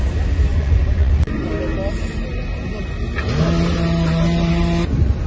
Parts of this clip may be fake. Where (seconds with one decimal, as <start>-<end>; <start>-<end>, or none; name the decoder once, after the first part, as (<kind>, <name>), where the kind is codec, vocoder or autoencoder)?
0.5-1.5 (vocoder, Vocos)